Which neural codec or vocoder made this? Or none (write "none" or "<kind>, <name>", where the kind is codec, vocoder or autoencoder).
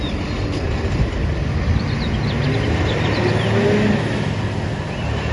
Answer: none